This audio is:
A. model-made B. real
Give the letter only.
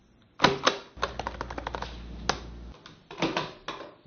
B